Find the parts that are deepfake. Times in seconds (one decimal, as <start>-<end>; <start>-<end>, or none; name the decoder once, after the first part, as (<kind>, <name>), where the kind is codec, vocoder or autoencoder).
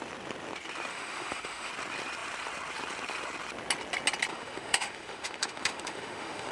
0.9-1.7 (autoencoder, DAC-VAE); 4.3-6.5